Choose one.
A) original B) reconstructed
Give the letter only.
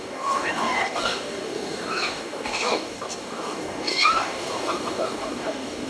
B